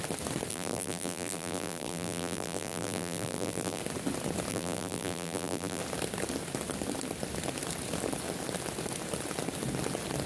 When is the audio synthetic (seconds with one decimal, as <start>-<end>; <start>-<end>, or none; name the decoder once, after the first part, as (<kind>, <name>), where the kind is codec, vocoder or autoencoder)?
0.5-3.8 (vocoder, BigVGAN v2); 4.5-5.8